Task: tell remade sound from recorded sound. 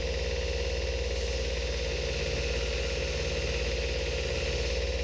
recorded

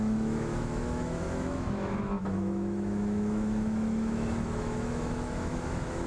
remade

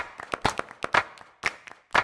recorded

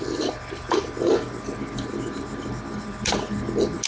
recorded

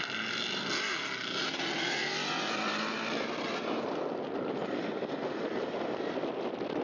recorded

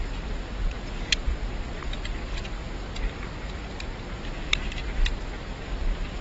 recorded